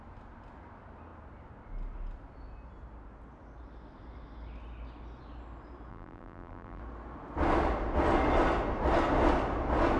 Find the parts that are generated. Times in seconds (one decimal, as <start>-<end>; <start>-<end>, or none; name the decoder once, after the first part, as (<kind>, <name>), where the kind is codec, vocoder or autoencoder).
5.9-6.8 (vocoder, BigVGAN v2)